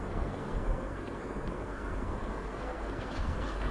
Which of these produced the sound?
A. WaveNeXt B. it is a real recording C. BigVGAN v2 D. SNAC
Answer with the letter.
D